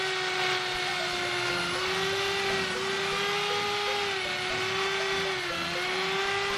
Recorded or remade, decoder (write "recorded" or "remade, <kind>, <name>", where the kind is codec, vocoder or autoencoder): recorded